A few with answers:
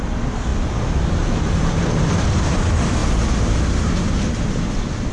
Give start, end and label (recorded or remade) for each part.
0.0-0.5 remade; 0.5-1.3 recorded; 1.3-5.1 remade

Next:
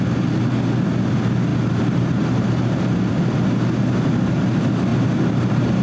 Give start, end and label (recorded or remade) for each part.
0.0-1.5 recorded; 1.5-3.1 remade; 3.1-4.9 recorded; 4.9-5.8 remade

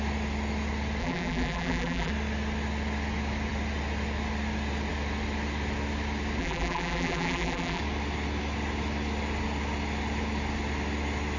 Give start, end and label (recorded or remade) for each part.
0.0-1.0 recorded; 1.0-2.1 remade; 2.1-6.4 recorded; 6.4-7.8 remade; 7.8-11.4 recorded

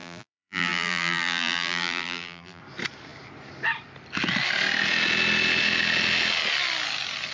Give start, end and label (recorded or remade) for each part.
0.0-2.6 remade; 2.6-7.3 recorded

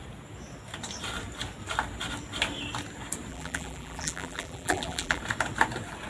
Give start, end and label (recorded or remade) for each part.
0.0-3.3 recorded; 3.3-5.2 remade; 5.2-6.1 recorded

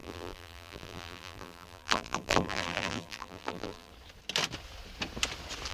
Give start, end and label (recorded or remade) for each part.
0.0-3.9 remade; 3.9-5.7 recorded

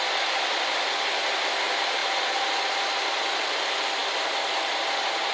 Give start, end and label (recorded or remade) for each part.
0.0-5.3 recorded

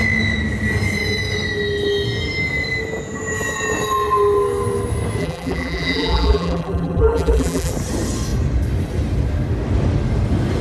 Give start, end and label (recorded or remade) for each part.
0.0-5.2 recorded; 5.2-7.7 remade; 7.7-10.6 recorded